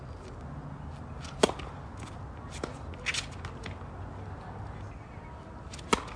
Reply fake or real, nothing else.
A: real